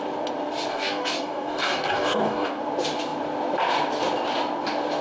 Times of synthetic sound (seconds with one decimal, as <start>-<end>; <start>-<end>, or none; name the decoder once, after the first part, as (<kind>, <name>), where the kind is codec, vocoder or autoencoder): 0.7-2.6 (codec, DAC)

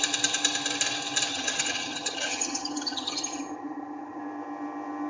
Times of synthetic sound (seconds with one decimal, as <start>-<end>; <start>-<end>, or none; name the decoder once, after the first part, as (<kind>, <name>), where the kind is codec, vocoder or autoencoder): 1.3-4.2 (vocoder, HiFi-GAN)